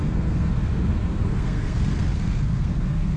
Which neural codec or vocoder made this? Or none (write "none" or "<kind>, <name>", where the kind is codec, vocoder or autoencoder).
codec, SNAC